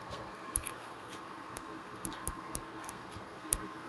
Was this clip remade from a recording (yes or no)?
yes